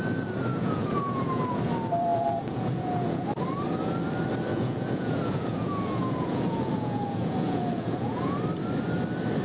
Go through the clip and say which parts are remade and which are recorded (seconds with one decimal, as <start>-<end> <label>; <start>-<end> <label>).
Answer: 0.0-0.5 recorded; 0.5-1.6 remade; 1.6-2.1 recorded; 2.1-3.2 remade; 3.2-4.5 recorded; 4.5-8.4 remade; 8.4-9.4 recorded